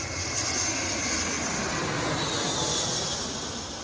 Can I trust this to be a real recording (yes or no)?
yes